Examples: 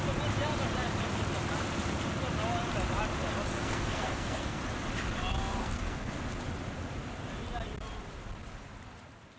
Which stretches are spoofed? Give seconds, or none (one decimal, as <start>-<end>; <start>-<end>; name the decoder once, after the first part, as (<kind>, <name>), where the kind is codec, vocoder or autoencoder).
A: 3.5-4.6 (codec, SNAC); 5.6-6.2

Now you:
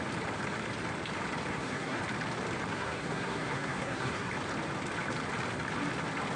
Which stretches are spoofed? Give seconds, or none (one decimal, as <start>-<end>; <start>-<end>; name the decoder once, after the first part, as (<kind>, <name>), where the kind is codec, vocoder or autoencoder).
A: 1.5-2.0 (codec, SNAC); 2.7-4.3

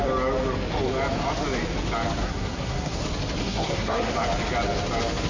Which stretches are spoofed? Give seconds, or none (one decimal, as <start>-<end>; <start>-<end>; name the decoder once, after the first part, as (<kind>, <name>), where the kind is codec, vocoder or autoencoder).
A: 2.2-3.0 (codec, SNAC); 3.4-4.1

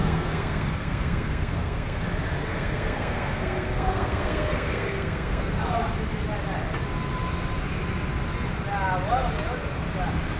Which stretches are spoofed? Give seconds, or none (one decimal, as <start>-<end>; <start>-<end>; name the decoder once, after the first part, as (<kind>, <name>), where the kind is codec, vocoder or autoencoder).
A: 0.0-2.0 (codec, SNAC); 2.4-5.6

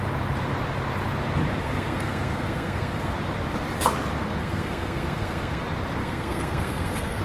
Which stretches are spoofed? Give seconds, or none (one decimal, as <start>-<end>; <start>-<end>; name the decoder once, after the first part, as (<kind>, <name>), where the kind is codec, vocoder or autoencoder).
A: 1.6-3.1 (codec, SNAC); 4.4-5.6; 6.0-7.2